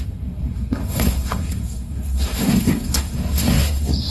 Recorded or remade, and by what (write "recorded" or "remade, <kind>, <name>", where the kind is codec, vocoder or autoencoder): remade, codec, SNAC